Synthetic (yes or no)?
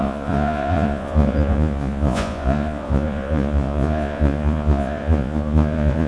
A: yes